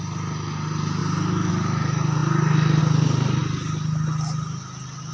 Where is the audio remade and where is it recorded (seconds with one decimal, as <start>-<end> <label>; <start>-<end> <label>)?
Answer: 0.0-5.1 recorded